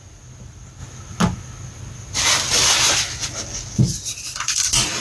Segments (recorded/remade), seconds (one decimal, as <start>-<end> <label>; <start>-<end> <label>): 0.0-5.0 recorded